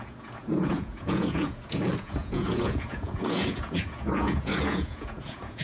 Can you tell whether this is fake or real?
fake